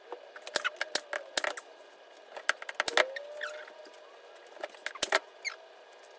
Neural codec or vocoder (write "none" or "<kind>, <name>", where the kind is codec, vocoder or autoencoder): none